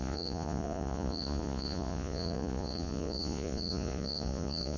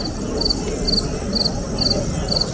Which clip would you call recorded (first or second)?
second